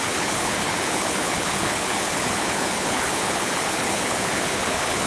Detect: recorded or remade remade